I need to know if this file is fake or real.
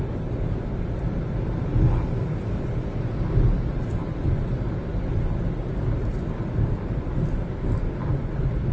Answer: fake